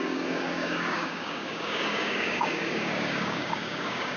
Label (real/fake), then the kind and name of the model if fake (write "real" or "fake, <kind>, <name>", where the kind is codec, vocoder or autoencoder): fake, codec, DAC